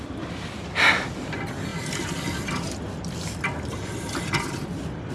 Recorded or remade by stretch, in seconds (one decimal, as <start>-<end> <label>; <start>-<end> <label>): 0.0-5.1 recorded